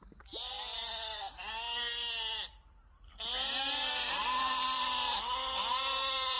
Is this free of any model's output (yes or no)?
no